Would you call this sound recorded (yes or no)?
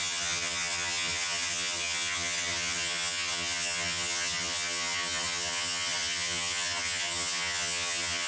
no